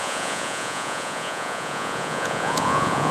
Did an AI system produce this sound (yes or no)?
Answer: yes